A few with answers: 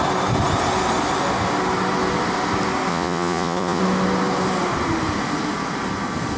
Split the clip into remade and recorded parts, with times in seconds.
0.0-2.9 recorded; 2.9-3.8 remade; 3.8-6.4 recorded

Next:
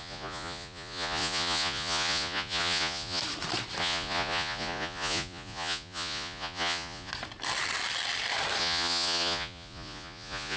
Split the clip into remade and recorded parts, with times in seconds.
0.0-3.2 remade; 3.2-3.8 recorded; 3.8-7.1 remade; 7.1-8.6 recorded; 8.6-10.6 remade

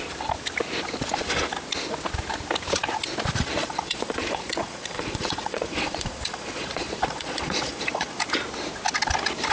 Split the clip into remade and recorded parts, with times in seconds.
0.0-3.6 recorded; 3.6-8.2 remade; 8.2-9.5 recorded

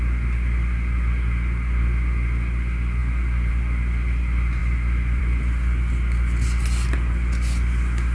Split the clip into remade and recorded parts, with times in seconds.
0.0-8.1 recorded

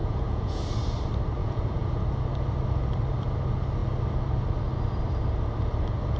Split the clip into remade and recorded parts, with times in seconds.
0.0-0.6 remade; 0.6-1.4 recorded; 1.4-2.0 remade; 2.0-6.2 recorded